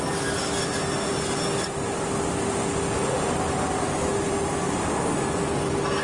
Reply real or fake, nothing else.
real